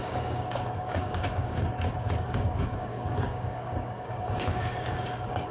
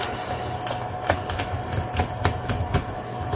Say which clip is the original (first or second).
second